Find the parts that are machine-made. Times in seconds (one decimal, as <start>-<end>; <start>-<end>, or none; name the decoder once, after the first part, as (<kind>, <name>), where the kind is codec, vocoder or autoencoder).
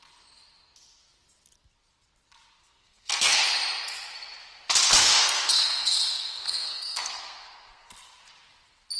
2.6-3.4 (codec, SNAC); 5.0-7.9